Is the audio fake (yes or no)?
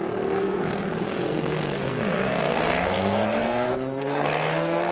yes